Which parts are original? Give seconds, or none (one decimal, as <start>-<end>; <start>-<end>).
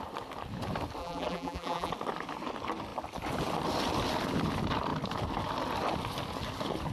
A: 0.0-1.0; 1.9-6.9